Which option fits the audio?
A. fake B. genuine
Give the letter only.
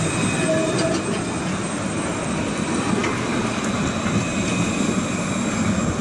B